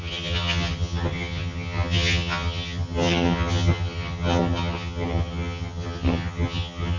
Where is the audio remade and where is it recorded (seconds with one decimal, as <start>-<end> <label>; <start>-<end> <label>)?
0.0-7.0 remade